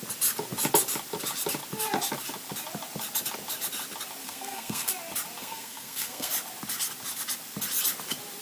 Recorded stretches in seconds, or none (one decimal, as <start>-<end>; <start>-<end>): 0.0-4.2; 4.9-5.4; 6.3-8.4

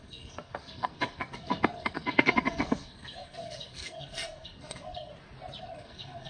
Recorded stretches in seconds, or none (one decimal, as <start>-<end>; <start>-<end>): 5.1-5.6

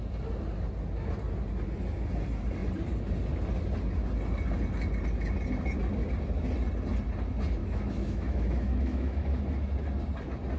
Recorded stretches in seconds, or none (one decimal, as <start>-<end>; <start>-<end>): 0.0-7.6; 9.4-10.6

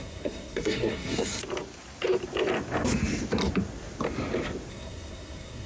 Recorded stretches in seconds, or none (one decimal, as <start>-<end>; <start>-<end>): 1.4-4.7

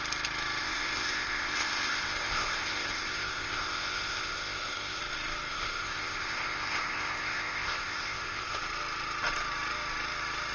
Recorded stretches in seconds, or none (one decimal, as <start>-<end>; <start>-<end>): 0.0-0.6; 5.0-5.5; 8.6-10.5

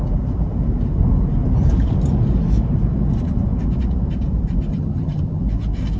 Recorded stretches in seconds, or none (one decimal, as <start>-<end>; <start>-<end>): 0.0-4.7; 5.4-6.0

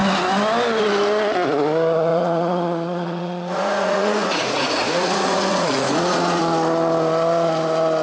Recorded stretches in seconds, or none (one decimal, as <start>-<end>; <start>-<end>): 0.0-2.1; 6.4-8.0